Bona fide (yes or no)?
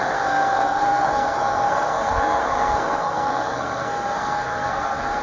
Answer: no